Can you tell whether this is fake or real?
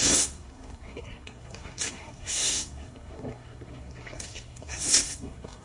fake